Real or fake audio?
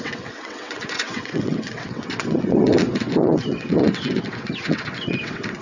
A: fake